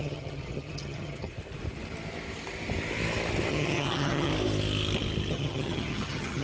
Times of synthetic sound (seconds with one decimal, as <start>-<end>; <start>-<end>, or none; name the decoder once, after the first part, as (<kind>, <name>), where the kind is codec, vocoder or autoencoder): 0.0-1.3 (vocoder, HiFi-GAN); 3.5-4.3; 5.3-6.4